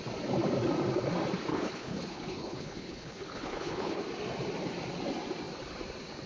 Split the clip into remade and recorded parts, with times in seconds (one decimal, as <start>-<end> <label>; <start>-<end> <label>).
0.0-1.5 recorded; 1.5-4.0 remade; 4.0-6.3 recorded